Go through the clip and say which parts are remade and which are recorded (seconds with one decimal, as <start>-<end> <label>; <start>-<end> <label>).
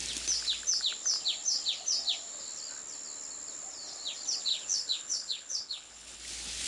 0.0-4.5 recorded; 4.5-6.2 remade; 6.2-6.7 recorded